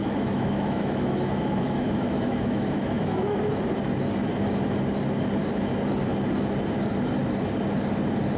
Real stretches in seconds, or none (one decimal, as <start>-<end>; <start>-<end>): 3.4-8.4